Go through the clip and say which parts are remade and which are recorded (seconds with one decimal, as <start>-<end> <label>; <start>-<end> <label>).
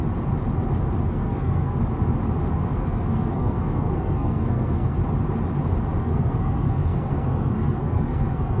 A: 0.0-1.0 recorded; 1.0-1.8 remade; 1.8-2.5 recorded; 2.5-5.0 remade; 5.0-6.0 recorded; 6.0-8.6 remade